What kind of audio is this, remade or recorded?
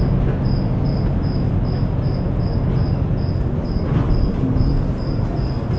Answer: recorded